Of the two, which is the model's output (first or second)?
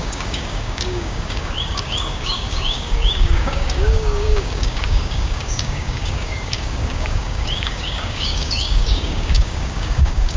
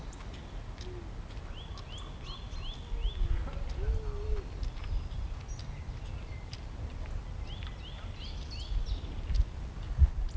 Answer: first